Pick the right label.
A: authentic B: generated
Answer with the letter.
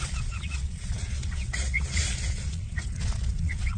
B